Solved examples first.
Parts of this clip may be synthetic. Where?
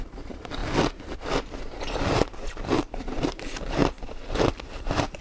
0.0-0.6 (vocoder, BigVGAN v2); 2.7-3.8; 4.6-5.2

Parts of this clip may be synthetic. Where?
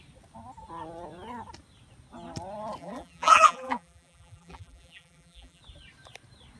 2.8-5.6 (vocoder, BigVGAN v2)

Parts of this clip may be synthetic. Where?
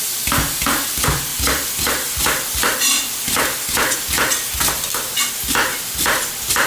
1.3-5.3 (vocoder, BigVGAN v2)